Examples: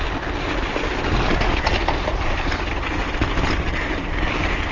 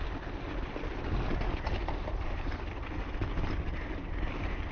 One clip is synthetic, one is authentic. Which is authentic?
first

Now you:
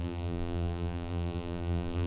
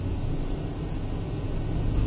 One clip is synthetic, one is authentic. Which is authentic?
second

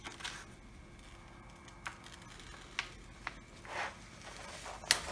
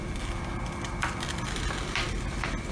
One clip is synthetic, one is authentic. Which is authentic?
first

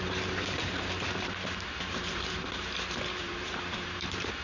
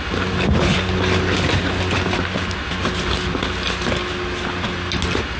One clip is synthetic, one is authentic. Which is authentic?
second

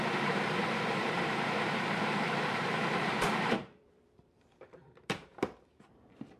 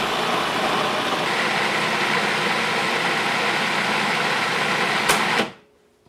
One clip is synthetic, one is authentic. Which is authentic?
second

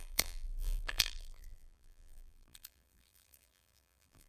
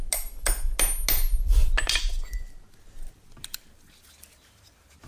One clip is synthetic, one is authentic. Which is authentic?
second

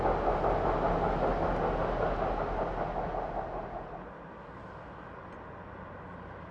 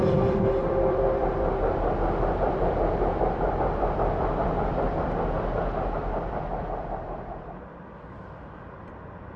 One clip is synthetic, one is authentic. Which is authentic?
first